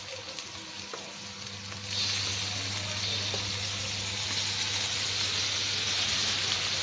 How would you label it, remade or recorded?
recorded